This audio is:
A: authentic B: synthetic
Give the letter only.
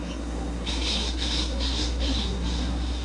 B